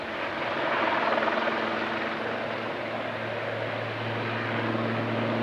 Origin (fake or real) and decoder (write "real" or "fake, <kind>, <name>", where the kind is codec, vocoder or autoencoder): real